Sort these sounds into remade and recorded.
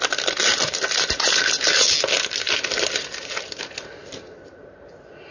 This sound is recorded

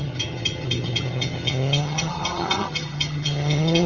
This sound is remade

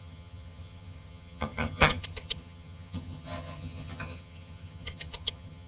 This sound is remade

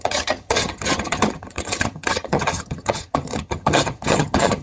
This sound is remade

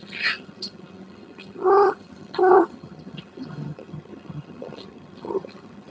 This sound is remade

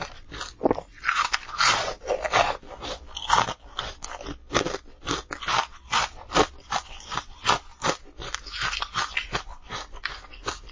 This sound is recorded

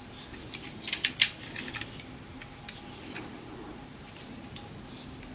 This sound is recorded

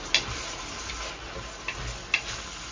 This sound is recorded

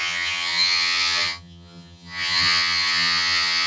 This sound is remade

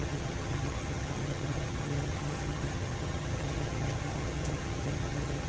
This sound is remade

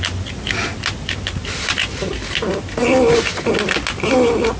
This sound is recorded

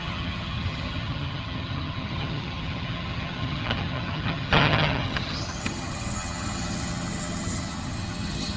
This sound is remade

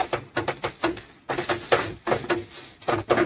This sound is recorded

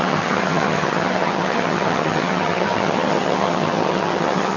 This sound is remade